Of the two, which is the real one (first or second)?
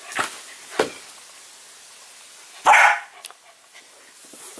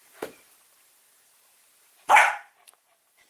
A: first